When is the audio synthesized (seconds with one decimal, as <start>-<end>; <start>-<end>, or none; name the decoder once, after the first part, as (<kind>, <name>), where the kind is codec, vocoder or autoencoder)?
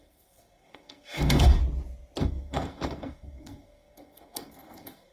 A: 0.0-1.6 (codec, SNAC); 2.2-5.1